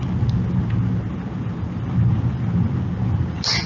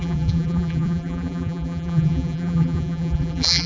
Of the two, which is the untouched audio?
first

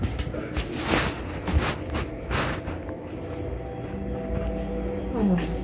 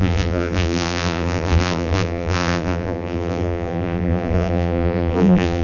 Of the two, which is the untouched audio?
first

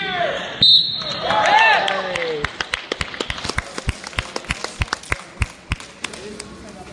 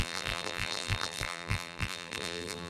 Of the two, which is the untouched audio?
first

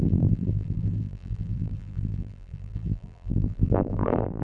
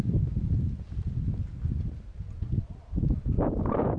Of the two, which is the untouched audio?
second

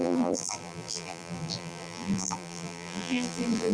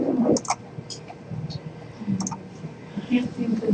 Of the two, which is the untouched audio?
second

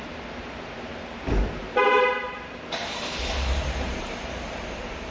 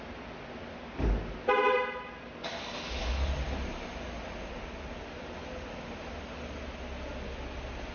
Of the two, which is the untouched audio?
second